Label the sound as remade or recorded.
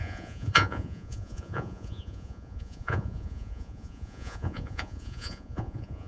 remade